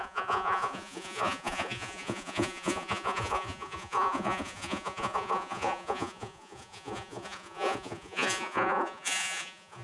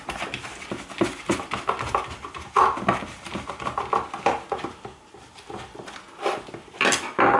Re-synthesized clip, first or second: first